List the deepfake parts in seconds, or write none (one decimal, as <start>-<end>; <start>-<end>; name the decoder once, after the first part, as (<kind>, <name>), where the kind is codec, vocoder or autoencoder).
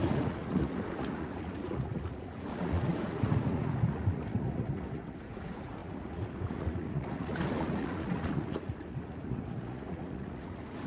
0.0-10.9 (vocoder, Vocos)